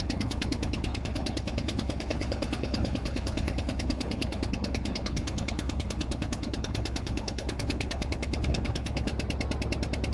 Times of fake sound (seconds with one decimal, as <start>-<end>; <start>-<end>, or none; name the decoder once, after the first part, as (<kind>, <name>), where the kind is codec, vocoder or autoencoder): 0.0-9.1 (codec, HILCodec)